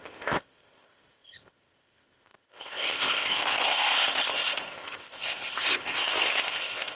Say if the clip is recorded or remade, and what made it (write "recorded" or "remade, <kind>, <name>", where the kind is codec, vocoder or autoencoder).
remade, codec, ZipCodec